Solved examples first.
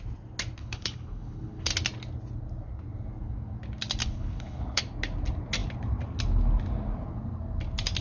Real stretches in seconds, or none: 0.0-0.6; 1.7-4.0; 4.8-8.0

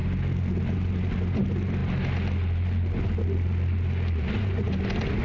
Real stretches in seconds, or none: 0.0-5.2

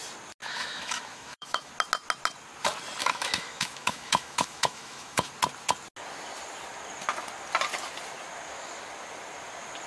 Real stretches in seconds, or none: 0.0-0.4; 1.7-3.0; 5.3-9.9

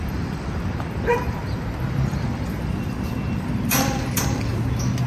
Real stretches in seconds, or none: 0.0-1.1; 4.2-5.1